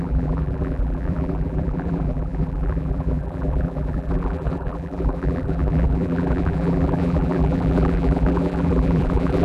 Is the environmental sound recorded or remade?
remade